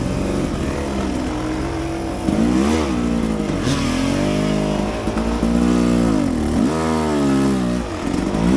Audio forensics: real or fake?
real